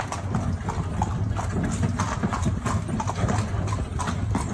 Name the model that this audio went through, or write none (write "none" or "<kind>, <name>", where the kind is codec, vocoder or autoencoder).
none